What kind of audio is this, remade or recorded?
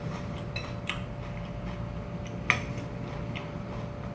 recorded